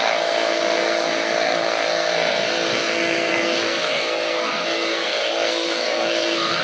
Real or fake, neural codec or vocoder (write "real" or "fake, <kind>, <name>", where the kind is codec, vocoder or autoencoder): fake, codec, SNAC